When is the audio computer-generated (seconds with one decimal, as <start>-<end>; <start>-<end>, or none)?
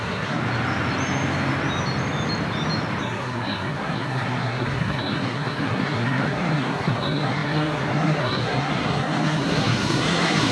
0.0-0.4; 3.0-10.5